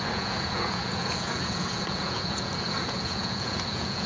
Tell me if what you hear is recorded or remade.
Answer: remade